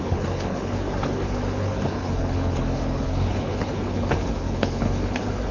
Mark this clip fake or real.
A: fake